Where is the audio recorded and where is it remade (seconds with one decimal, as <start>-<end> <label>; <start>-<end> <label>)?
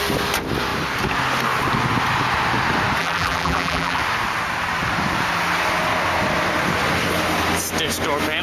0.0-3.0 recorded; 3.0-4.0 remade; 4.0-8.4 recorded